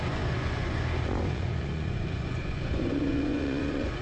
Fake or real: fake